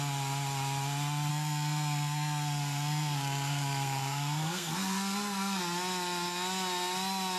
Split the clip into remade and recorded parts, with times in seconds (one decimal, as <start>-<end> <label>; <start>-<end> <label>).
0.0-1.3 recorded; 1.3-5.6 remade; 5.6-7.4 recorded